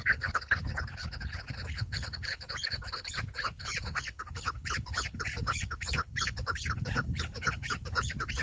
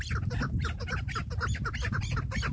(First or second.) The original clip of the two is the second